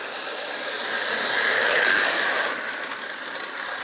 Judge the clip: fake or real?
real